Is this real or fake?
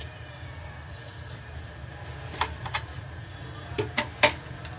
real